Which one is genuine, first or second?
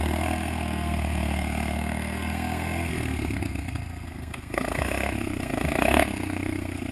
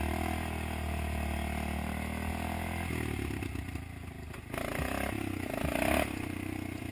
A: second